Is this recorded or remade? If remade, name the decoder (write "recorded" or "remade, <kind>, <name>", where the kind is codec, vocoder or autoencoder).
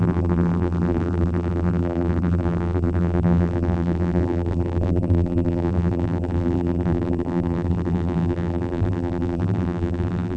remade, vocoder, BigVGAN v2